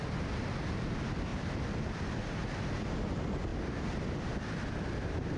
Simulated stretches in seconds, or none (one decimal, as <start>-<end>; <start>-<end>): 1.3-1.9; 3.5-4.7